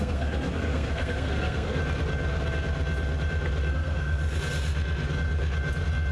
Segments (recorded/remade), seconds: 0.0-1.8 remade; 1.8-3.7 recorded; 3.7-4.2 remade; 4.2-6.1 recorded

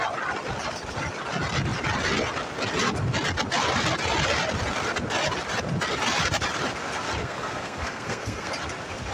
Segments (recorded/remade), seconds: 0.0-7.2 recorded; 7.2-8.5 remade; 8.5-9.1 recorded

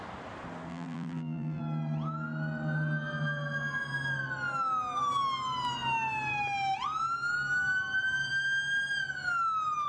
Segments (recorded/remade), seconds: 0.0-0.7 recorded; 0.7-1.6 remade; 1.6-9.9 recorded

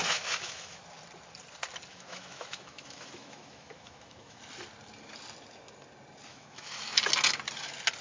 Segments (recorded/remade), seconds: 0.0-0.8 remade; 0.8-1.9 recorded; 1.9-4.4 remade; 4.4-6.3 recorded; 6.3-6.8 remade; 6.8-8.0 recorded

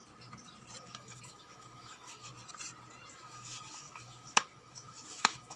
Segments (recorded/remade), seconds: 0.0-0.8 recorded; 0.8-2.3 remade; 2.3-3.1 recorded; 3.1-5.6 remade

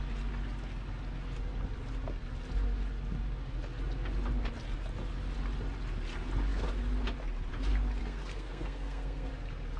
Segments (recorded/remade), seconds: 0.0-8.0 recorded; 8.0-9.3 remade; 9.3-9.8 recorded

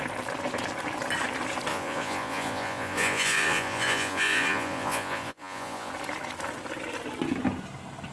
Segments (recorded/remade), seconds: 0.0-1.7 recorded; 1.7-5.9 remade; 5.9-8.1 recorded